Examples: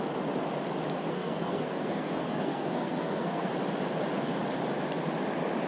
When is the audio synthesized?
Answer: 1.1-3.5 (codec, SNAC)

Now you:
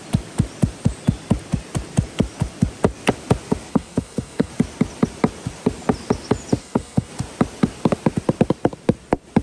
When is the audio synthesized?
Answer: 3.7-4.5 (codec, SNAC); 6.6-7.1

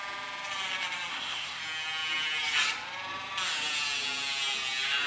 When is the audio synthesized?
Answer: 1.1-1.6 (codec, SNAC)

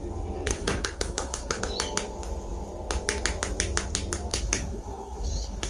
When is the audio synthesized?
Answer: 0.5-1.6 (codec, SNAC); 4.3-5.7

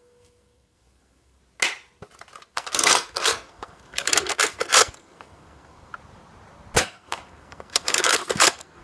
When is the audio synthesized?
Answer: 0.0-1.4 (codec, SNAC); 2.5-5.9; 6.8-8.8

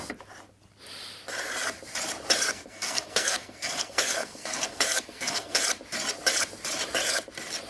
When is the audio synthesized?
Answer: 2.4-5.6 (codec, SNAC)

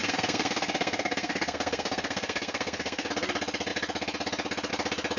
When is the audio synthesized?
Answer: 0.0-3.1 (codec, SNAC)